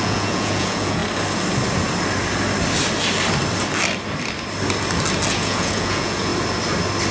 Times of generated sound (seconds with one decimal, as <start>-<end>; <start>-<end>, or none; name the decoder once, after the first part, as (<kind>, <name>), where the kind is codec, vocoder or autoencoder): 0.0-1.0 (vocoder, Vocos); 5.3-6.3